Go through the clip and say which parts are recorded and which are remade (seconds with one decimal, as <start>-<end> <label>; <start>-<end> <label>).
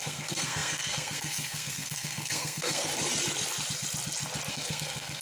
0.0-2.9 remade; 2.9-4.5 recorded; 4.5-5.2 remade